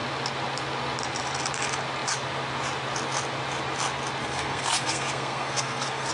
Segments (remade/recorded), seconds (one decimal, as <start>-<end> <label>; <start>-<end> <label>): 0.0-4.2 recorded; 4.2-6.1 remade